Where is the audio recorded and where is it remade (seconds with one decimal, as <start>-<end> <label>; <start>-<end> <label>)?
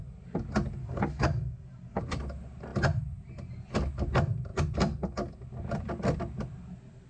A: 0.0-0.8 recorded; 0.8-2.0 remade; 2.0-7.1 recorded